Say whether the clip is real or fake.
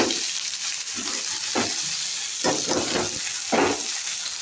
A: real